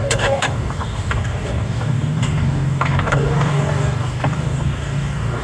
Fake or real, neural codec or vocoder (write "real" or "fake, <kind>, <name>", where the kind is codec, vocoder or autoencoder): fake, codec, DAC